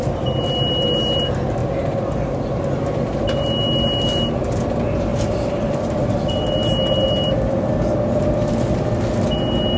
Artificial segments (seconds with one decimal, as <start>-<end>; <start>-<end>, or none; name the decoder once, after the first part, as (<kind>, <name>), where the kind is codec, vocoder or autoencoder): none